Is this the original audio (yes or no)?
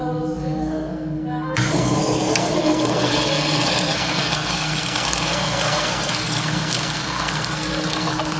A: no